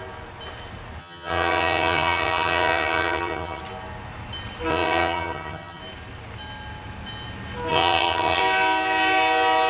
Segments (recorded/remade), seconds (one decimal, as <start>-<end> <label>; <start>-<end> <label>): 0.0-1.0 recorded; 1.0-3.6 remade; 3.6-4.7 recorded; 4.7-5.8 remade; 5.8-7.7 recorded; 7.7-8.4 remade; 8.4-9.7 recorded